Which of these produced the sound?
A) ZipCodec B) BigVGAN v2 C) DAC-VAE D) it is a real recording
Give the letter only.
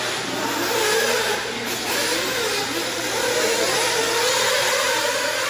D